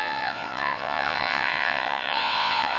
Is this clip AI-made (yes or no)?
yes